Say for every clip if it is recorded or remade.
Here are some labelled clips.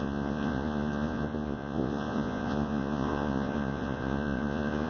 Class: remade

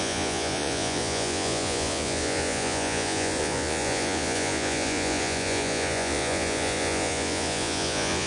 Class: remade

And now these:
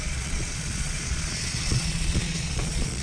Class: remade